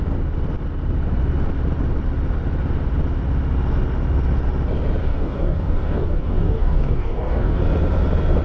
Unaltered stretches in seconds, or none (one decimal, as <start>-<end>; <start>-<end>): 0.0-5.0; 7.6-8.4